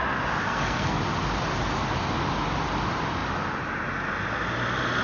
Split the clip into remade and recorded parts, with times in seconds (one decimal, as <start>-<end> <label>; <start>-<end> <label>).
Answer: 0.0-0.4 recorded; 0.4-1.0 remade; 1.0-5.0 recorded